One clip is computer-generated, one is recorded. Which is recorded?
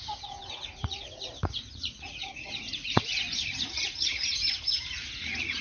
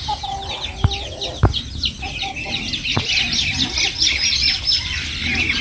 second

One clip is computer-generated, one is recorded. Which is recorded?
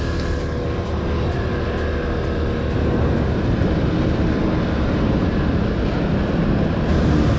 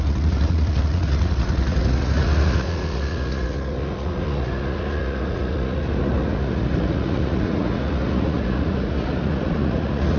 first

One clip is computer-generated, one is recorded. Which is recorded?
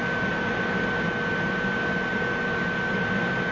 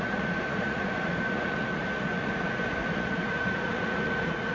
first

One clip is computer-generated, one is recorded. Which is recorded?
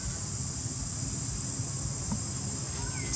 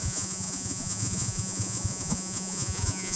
first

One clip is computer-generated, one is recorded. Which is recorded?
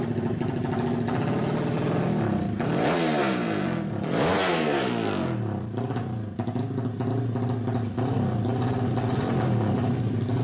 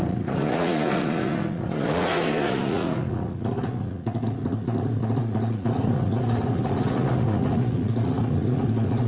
first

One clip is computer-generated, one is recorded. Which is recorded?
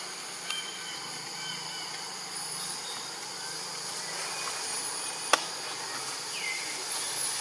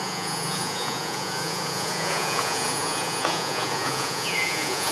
first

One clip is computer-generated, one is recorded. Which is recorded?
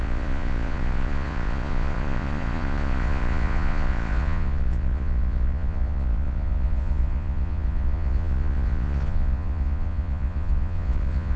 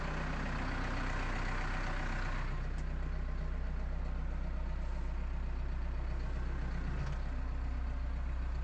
second